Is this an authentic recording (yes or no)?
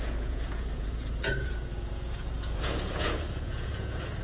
no